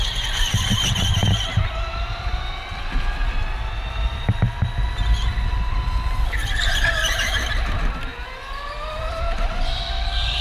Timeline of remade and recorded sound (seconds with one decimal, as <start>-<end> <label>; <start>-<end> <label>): 0.0-10.4 recorded

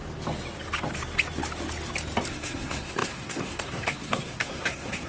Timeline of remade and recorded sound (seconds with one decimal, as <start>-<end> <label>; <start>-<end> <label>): 0.0-2.3 recorded; 2.3-5.1 remade

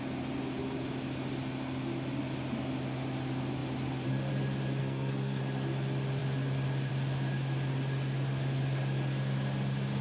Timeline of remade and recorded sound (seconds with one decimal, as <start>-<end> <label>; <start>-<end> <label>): 0.0-4.8 recorded; 4.8-5.4 remade; 5.4-10.0 recorded

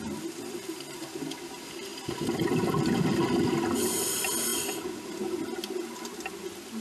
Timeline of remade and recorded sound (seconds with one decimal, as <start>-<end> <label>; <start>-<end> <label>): 0.0-6.8 recorded

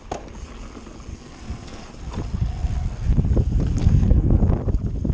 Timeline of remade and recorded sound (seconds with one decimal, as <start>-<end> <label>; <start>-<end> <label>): 0.0-1.1 recorded; 1.1-1.8 remade; 1.8-3.8 recorded; 3.8-4.4 remade; 4.4-5.1 recorded

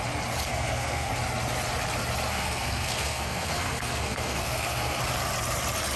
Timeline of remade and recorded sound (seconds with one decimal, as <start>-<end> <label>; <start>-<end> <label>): 0.0-0.5 recorded; 0.5-1.1 remade; 1.1-2.3 recorded; 2.3-5.0 remade; 5.0-6.0 recorded

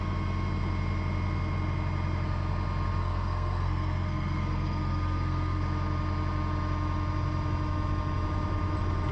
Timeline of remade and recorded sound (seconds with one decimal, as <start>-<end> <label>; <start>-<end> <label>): 0.0-3.0 recorded; 3.0-5.6 remade; 5.6-9.1 recorded

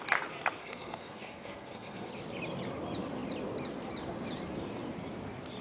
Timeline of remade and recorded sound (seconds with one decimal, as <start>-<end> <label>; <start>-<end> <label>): 0.0-0.6 recorded; 0.6-2.1 remade; 2.1-5.6 recorded